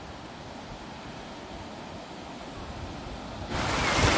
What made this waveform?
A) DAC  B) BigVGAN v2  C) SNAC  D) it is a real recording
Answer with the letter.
D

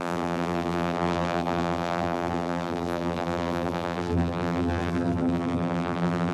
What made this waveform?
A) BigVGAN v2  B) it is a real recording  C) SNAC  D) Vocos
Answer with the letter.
A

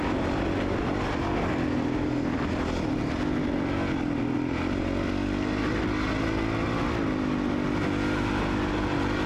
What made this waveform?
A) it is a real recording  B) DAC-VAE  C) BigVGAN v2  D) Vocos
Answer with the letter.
A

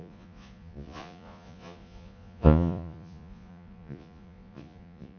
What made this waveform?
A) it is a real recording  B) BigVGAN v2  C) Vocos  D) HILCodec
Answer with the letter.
C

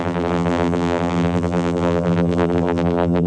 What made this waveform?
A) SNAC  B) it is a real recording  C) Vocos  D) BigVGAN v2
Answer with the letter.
D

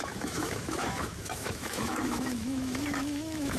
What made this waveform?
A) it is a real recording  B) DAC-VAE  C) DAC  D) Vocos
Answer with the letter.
B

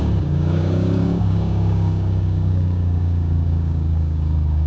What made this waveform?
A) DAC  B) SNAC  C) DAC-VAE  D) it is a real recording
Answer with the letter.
A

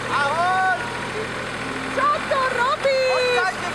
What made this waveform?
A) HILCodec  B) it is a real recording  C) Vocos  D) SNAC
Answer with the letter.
B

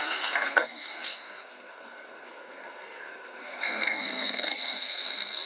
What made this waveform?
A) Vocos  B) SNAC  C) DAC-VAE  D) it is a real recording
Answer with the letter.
B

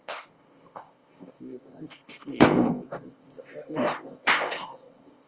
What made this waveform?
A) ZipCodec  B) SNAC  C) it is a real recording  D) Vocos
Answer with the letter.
A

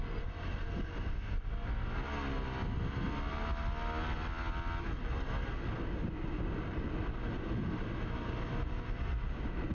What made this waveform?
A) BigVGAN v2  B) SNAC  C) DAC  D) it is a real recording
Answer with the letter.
D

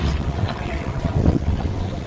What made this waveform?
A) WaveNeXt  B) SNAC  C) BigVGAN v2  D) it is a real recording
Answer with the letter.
A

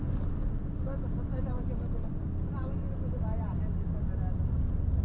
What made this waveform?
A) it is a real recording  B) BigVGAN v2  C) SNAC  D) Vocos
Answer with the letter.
A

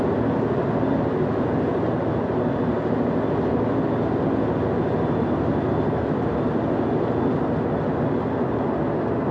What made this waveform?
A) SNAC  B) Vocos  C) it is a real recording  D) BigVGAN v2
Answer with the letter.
C